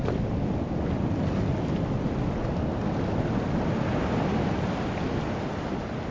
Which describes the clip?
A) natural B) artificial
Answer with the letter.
A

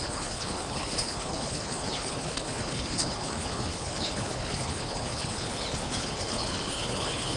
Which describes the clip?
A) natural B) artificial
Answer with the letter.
B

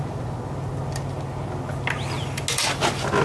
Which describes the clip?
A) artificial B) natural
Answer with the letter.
B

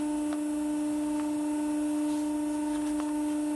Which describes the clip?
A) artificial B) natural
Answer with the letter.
B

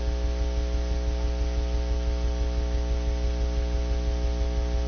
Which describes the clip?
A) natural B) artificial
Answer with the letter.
A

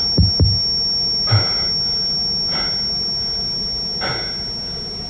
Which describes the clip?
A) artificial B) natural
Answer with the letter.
B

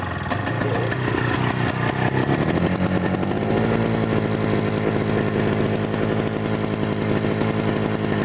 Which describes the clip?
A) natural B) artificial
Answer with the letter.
A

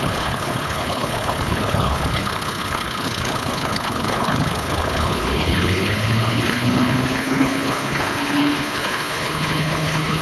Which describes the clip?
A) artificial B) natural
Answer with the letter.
A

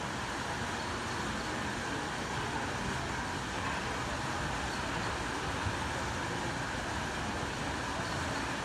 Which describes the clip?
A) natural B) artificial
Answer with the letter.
A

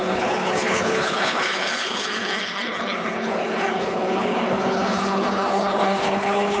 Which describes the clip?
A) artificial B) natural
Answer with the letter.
A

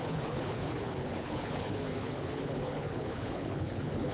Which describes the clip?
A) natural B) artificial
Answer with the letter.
B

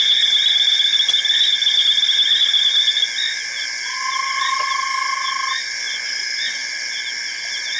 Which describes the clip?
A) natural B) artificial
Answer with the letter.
A